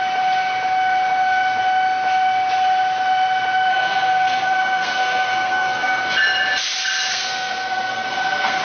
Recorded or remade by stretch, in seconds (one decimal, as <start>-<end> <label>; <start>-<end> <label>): 0.0-3.7 recorded; 3.7-6.0 remade; 6.0-7.1 recorded; 7.1-8.6 remade